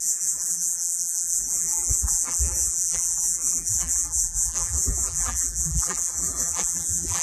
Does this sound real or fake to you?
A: fake